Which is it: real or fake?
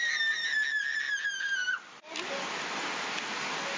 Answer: real